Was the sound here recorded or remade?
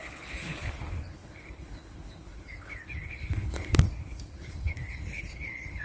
remade